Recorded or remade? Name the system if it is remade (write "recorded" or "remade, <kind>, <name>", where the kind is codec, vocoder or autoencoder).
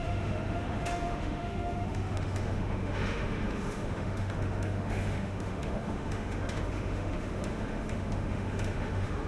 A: remade, autoencoder, DAC-VAE